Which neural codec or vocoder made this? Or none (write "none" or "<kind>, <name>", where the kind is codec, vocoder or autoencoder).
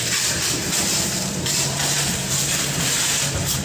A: vocoder, BigVGAN v2